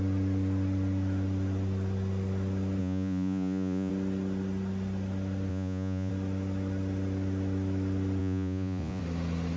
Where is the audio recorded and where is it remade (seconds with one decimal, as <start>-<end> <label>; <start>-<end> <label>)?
0.0-2.8 recorded; 2.8-3.9 remade; 3.9-5.5 recorded; 5.5-6.1 remade; 6.1-8.2 recorded; 8.2-9.0 remade; 9.0-9.6 recorded